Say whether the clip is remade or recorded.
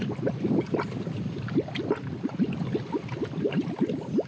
recorded